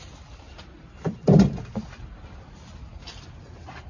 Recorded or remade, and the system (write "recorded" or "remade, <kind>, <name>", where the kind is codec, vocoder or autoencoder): recorded